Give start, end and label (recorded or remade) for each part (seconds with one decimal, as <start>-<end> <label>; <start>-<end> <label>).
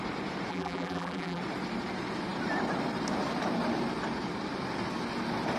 0.0-0.5 recorded; 0.5-1.4 remade; 1.4-5.6 recorded